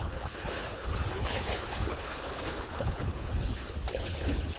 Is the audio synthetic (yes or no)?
yes